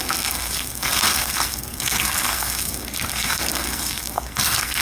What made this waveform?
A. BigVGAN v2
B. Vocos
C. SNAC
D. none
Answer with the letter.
C